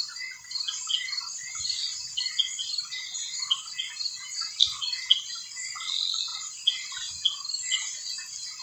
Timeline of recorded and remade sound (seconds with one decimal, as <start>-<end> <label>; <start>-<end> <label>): 0.0-8.6 recorded